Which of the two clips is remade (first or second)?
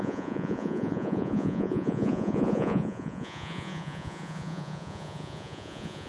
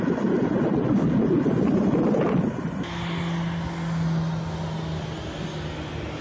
first